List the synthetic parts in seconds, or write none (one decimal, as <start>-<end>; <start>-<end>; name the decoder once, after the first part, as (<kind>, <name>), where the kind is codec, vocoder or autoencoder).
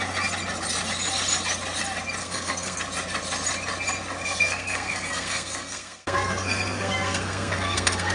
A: 2.2-2.8 (codec, SNAC); 4.2-8.1